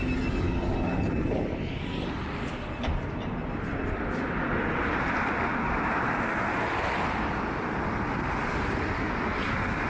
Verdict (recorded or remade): recorded